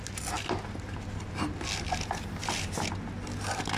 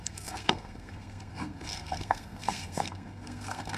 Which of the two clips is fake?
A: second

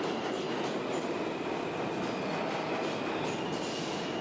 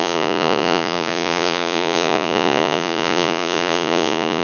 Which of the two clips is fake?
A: second